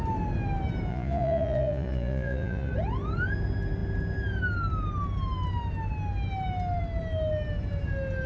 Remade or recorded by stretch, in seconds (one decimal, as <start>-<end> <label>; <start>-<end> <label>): 0.0-0.9 recorded; 0.9-2.7 remade; 2.7-8.3 recorded